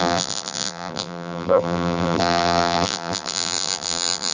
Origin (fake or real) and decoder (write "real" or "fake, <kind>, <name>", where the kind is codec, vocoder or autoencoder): fake, vocoder, BigVGAN v2